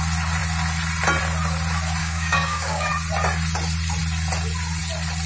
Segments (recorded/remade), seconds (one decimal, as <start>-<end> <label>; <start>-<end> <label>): 0.0-2.0 recorded; 2.0-2.9 remade; 2.9-5.3 recorded